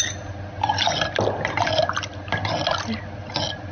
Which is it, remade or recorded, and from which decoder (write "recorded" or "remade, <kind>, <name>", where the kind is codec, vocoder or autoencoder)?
recorded